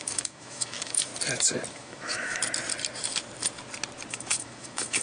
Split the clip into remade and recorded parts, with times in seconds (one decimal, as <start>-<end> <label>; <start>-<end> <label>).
0.0-1.1 remade; 1.1-1.7 recorded; 1.7-2.4 remade; 2.4-4.1 recorded; 4.1-5.0 remade